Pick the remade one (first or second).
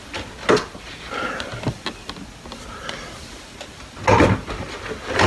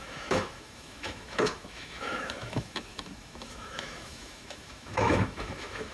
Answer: second